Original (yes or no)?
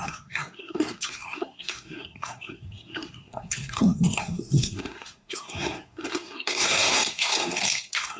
no